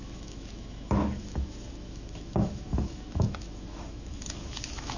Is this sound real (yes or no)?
no